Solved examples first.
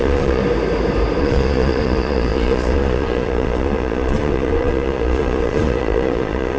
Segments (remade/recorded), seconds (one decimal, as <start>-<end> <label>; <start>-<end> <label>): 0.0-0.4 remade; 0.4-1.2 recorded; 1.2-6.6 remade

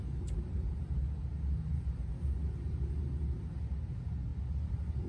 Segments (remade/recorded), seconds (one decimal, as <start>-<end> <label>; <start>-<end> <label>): 0.0-2.1 remade; 2.1-5.1 recorded

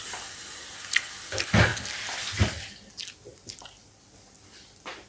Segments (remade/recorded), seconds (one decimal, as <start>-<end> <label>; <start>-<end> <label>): 0.0-3.3 recorded; 3.3-3.9 remade; 3.9-5.1 recorded

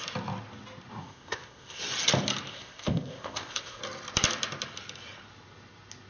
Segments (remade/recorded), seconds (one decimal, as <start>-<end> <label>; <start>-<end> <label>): 0.0-1.0 recorded; 1.0-1.8 remade; 1.8-2.5 recorded; 2.5-3.8 remade; 3.8-6.1 recorded

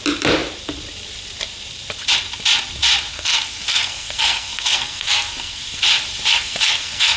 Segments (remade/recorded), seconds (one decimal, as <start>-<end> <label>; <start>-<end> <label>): 0.0-3.1 recorded; 3.1-5.8 remade; 5.8-6.3 recorded; 6.3-7.2 remade

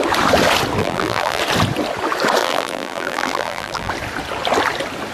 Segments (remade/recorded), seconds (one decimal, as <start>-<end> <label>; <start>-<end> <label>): 0.0-0.8 recorded; 0.8-1.4 remade; 1.4-2.4 recorded; 2.4-3.9 remade; 3.9-5.1 recorded

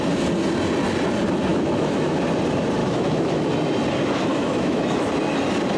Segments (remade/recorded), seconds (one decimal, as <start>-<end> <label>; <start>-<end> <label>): 0.0-1.5 recorded; 1.5-2.2 remade; 2.2-2.8 recorded; 2.8-3.5 remade; 3.5-4.3 recorded; 4.3-5.1 remade; 5.1-5.8 recorded

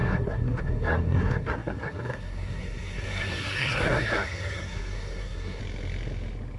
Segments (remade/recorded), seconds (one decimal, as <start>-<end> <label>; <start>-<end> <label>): 0.0-5.6 remade; 5.6-6.6 recorded